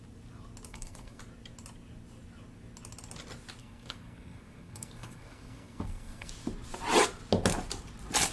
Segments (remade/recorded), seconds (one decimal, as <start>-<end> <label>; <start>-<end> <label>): 0.0-0.7 recorded; 0.7-1.2 remade; 1.2-3.6 recorded; 3.6-6.3 remade; 6.3-8.3 recorded